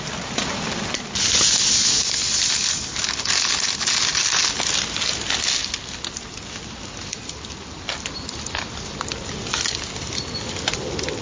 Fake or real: real